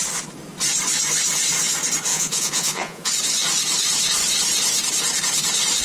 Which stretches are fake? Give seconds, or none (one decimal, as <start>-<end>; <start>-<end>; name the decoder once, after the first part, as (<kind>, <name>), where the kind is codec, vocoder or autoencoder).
2.1-3.1 (vocoder, Vocos)